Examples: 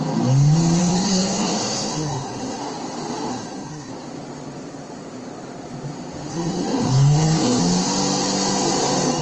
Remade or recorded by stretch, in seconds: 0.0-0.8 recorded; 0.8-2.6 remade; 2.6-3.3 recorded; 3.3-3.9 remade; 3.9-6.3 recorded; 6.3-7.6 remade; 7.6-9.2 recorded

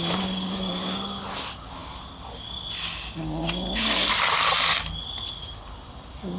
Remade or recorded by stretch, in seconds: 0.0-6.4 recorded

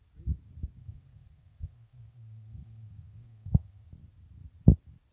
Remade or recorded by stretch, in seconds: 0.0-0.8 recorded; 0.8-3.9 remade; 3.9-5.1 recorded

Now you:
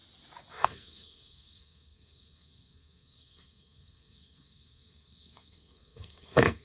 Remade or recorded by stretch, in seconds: 0.0-0.5 recorded; 0.5-6.6 remade